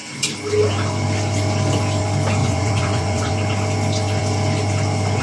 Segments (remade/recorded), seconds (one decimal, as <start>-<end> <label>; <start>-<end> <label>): 0.0-2.4 recorded; 2.4-3.3 remade; 3.3-5.2 recorded